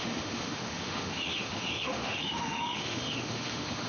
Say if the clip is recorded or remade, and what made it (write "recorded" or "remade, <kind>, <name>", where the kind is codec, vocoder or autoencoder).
remade, autoencoder, DAC-VAE